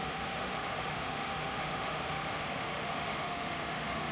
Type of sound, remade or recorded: remade